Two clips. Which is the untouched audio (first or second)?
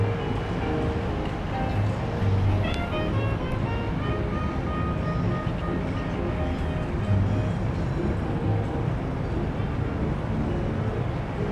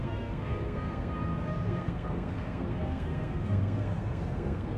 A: first